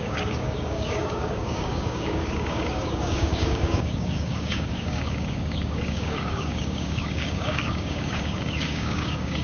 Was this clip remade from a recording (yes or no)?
yes